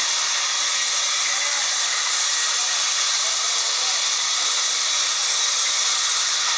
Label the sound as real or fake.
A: real